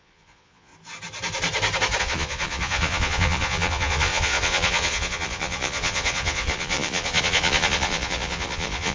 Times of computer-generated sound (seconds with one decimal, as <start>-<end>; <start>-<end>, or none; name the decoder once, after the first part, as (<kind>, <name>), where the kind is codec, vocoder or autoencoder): 0.0-0.7 (vocoder, Vocos); 2.0-8.9